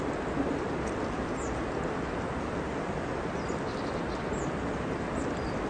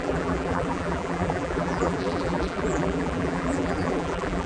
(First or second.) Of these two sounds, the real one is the first